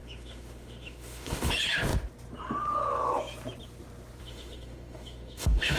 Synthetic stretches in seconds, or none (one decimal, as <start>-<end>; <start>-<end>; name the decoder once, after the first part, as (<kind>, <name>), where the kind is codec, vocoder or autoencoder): 0.0-1.5 (autoencoder, DAC-VAE); 4.2-5.8